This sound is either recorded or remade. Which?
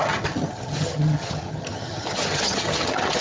remade